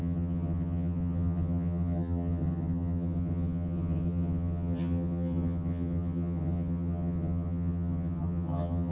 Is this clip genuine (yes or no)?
no